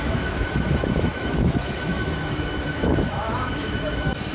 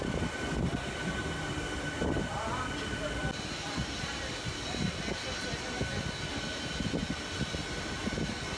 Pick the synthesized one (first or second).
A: first